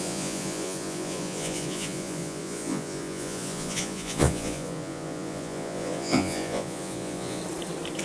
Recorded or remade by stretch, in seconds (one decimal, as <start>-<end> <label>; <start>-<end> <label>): 0.0-7.4 remade; 7.4-8.0 recorded